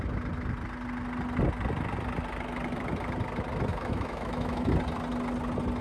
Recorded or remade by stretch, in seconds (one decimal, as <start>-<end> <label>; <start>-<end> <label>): 0.0-3.7 recorded; 3.7-4.7 remade; 4.7-5.8 recorded

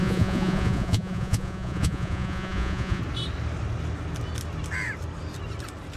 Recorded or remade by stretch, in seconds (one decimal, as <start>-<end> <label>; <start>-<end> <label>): 0.0-3.0 remade; 3.0-6.0 recorded

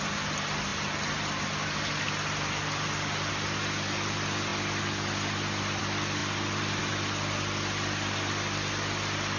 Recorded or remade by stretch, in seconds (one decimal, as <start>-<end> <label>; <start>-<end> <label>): 0.0-9.4 recorded

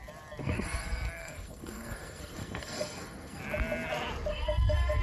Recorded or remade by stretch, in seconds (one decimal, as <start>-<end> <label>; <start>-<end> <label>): 0.0-0.4 recorded; 0.4-3.4 remade; 3.4-4.3 recorded; 4.3-5.0 remade

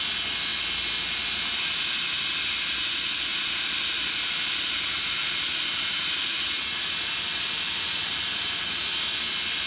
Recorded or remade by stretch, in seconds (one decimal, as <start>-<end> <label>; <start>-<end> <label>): 0.0-9.7 recorded